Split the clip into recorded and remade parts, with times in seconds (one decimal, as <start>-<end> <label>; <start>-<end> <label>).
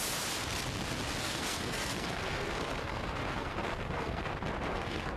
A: 0.0-1.2 recorded; 1.2-4.3 remade; 4.3-4.7 recorded; 4.7-5.2 remade